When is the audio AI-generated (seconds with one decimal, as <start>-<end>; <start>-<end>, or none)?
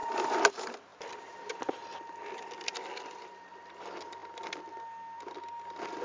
none